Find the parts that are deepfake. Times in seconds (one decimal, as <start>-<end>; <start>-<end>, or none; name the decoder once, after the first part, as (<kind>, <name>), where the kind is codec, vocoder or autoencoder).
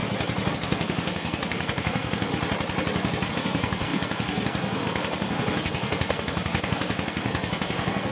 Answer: 0.5-2.3 (codec, SNAC); 3.3-8.1